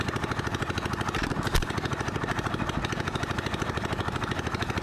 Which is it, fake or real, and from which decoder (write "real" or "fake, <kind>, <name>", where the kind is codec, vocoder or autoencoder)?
real